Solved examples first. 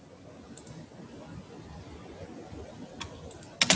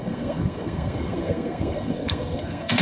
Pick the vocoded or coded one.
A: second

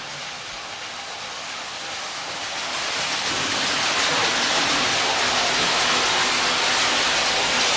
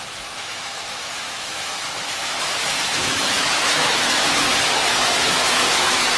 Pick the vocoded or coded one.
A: second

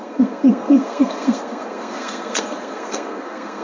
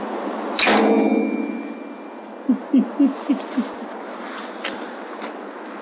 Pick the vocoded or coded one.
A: first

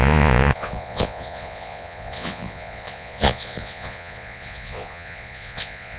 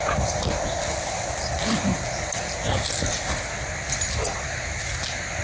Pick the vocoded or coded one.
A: first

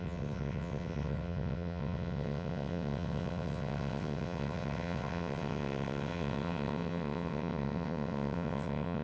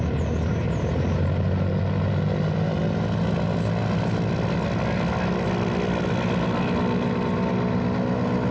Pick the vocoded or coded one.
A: first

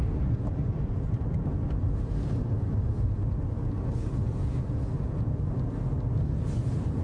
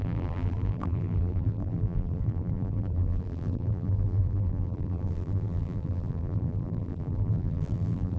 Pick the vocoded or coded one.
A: second